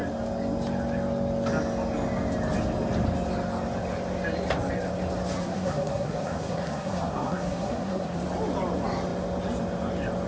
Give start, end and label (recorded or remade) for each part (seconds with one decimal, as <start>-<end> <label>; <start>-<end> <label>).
0.0-5.4 recorded; 5.4-8.2 remade; 8.2-10.3 recorded